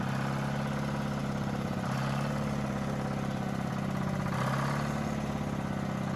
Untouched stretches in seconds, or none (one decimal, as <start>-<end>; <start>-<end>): 0.0-1.2; 3.7-6.2